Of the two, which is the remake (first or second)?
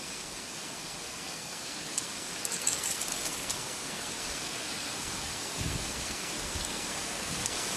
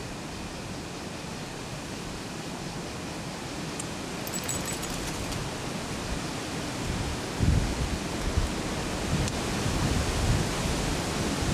first